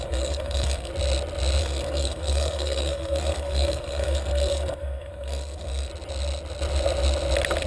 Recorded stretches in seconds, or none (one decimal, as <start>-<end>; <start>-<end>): 0.9-1.6; 5.9-7.7